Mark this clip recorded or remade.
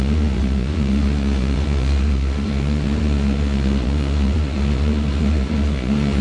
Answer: remade